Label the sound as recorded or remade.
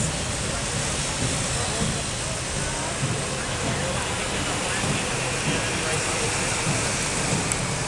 recorded